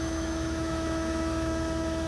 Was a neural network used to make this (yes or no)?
yes